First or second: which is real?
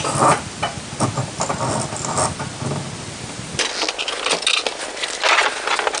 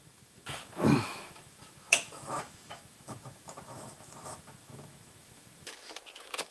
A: first